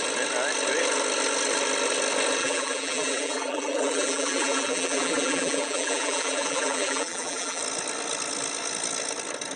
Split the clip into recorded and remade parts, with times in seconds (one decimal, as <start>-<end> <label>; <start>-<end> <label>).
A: 0.0-2.4 recorded; 2.4-7.6 remade; 7.6-9.6 recorded